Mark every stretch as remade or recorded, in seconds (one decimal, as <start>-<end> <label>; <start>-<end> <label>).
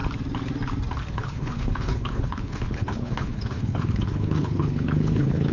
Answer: 0.0-1.1 recorded; 1.1-5.5 remade